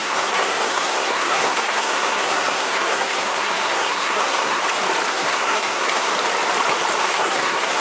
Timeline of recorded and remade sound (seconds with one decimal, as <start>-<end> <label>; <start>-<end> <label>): 0.0-4.6 remade; 4.6-5.1 recorded; 5.1-6.1 remade; 6.1-7.0 recorded; 7.0-7.8 remade